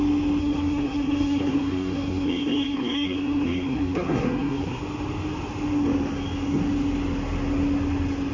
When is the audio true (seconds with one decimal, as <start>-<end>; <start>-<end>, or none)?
0.0-0.4; 4.8-8.3